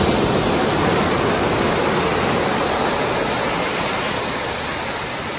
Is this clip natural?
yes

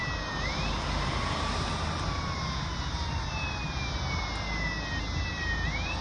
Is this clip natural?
yes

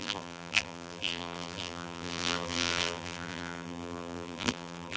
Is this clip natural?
no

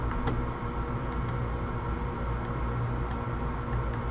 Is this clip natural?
yes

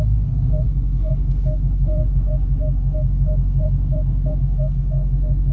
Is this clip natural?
no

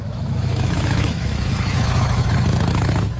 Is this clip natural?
no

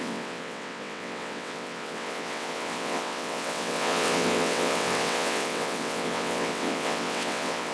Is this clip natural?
no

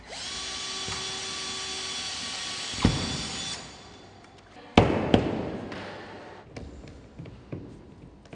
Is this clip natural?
yes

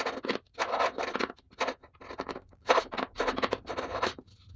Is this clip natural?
yes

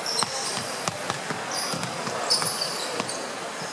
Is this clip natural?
yes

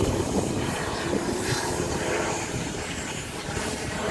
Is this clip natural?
no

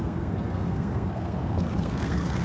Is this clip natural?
no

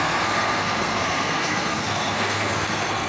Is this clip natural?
no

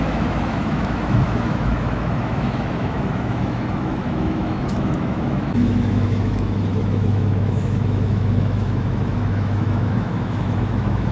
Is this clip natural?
no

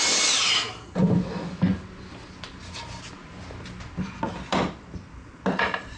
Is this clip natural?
yes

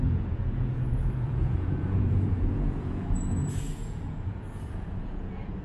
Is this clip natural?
no